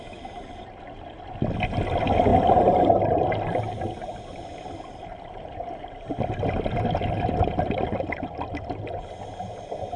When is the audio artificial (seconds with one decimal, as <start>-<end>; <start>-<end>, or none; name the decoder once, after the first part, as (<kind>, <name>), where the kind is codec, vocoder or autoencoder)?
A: none